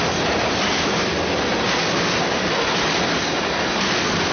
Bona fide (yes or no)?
yes